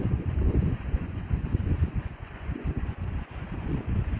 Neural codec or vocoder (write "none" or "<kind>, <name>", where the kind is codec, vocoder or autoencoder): vocoder, Vocos